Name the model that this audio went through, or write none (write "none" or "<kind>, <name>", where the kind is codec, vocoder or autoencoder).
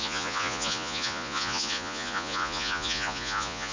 vocoder, Vocos